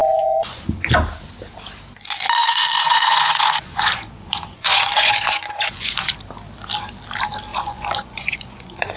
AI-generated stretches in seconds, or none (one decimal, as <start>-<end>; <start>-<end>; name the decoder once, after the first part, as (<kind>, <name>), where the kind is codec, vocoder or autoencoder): 0.0-0.9 (vocoder, Vocos); 2.4-6.1; 7.5-9.0